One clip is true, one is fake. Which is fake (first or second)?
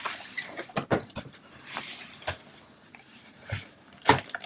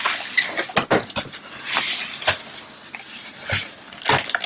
first